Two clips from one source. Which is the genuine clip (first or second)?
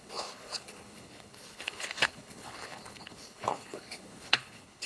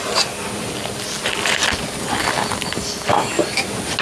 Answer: second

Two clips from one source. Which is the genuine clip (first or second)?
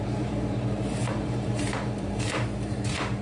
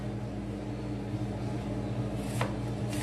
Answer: second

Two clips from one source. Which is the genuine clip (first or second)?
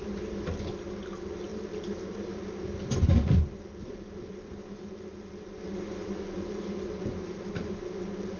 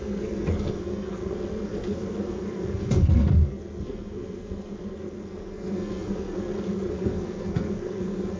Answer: first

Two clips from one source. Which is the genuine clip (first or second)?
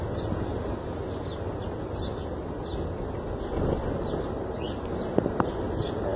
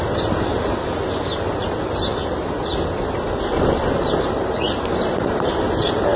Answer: first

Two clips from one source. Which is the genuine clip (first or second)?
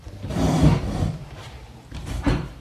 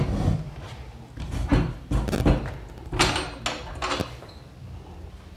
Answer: second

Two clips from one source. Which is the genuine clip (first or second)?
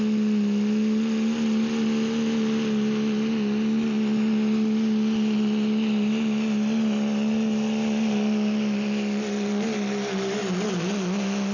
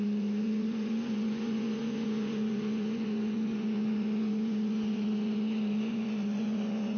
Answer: first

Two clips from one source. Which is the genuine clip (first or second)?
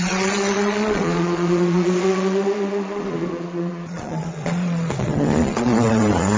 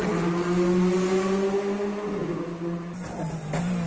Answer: second